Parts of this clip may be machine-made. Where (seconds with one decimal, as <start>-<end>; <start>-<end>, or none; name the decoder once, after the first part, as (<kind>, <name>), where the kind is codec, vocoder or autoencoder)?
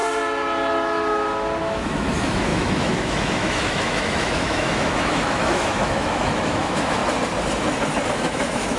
1.6-7.0 (autoencoder, DAC-VAE); 8.1-8.8